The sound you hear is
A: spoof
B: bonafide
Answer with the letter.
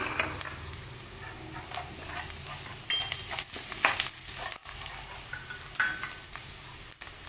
B